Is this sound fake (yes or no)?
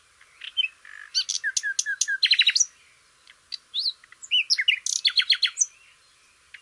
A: no